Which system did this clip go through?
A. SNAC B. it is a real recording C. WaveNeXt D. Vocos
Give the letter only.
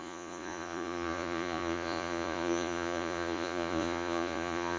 D